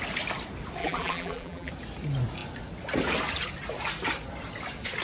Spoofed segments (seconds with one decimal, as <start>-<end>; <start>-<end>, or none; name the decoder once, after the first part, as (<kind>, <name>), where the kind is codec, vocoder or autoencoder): 0.8-1.7 (vocoder, BigVGAN v2)